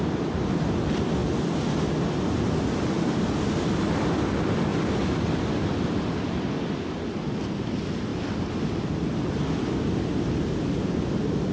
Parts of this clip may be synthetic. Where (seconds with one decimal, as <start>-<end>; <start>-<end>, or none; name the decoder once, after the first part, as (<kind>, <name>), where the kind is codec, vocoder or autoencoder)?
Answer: none